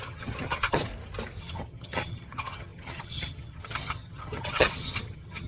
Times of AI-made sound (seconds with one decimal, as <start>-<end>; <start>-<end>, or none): 0.0-0.9; 1.4-5.5